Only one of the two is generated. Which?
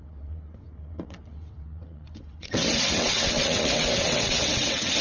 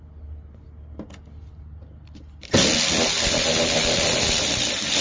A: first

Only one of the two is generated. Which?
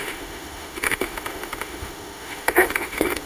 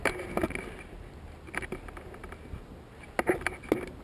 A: first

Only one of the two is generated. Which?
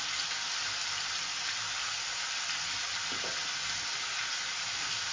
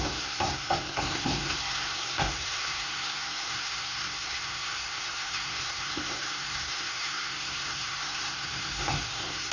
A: second